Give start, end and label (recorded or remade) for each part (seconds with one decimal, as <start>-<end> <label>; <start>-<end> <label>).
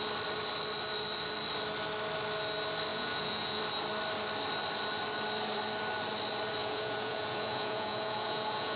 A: 0.0-2.9 recorded; 2.9-3.6 remade; 3.6-6.6 recorded; 6.6-8.8 remade